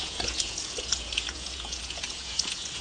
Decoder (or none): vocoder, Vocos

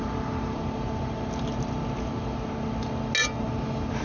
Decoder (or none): none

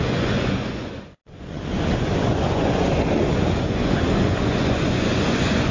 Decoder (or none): vocoder, Vocos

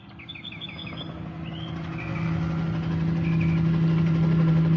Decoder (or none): none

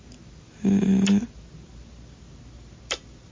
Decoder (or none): none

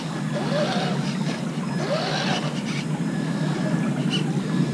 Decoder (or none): none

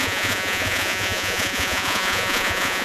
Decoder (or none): vocoder, Vocos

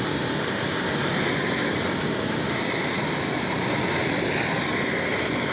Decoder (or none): none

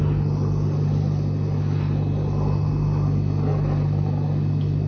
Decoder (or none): none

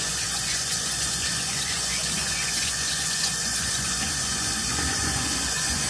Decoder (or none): vocoder, Vocos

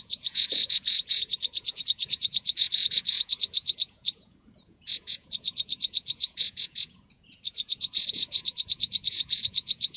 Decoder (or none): vocoder, Vocos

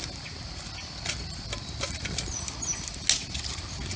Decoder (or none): none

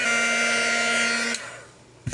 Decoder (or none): none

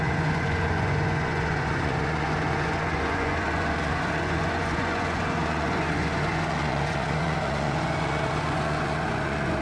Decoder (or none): vocoder, Vocos